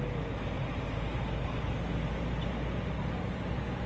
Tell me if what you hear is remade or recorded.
recorded